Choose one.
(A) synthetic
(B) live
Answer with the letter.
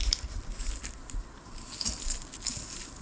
B